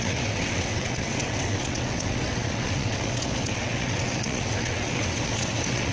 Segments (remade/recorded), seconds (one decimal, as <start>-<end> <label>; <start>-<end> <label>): 0.0-5.9 remade